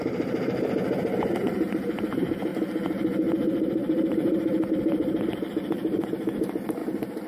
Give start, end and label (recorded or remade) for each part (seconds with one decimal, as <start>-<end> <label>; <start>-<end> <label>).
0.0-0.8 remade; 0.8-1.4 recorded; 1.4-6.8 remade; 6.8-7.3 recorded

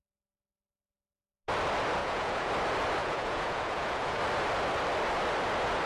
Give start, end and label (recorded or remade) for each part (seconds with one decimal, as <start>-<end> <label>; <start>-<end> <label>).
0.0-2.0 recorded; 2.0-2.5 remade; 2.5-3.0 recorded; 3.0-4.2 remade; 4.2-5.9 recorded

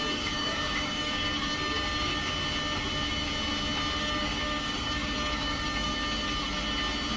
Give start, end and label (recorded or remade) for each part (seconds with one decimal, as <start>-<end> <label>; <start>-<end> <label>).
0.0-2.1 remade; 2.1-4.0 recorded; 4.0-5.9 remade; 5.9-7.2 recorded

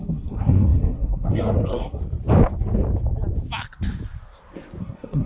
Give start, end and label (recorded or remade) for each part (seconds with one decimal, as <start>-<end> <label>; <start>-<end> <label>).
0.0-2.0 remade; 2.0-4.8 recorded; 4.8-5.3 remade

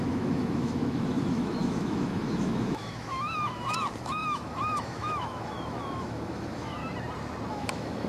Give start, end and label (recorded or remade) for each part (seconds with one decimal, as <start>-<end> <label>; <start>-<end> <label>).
0.0-6.8 remade; 6.8-7.5 recorded; 7.5-8.1 remade

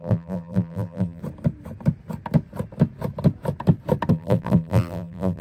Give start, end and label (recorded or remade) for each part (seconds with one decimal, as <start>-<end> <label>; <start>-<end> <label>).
0.0-1.2 remade; 1.2-4.1 recorded; 4.1-5.4 remade

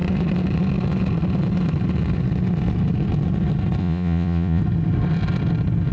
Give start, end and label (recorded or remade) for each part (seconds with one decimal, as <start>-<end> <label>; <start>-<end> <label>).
0.0-3.8 recorded; 3.8-4.6 remade; 4.6-5.9 recorded

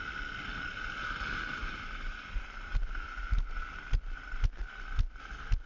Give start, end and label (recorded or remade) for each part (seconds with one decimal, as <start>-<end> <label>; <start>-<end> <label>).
0.0-1.6 recorded; 1.6-4.2 remade; 4.2-5.7 recorded